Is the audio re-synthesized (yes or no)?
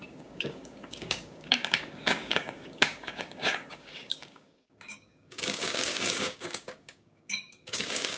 yes